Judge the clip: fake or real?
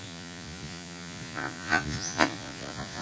fake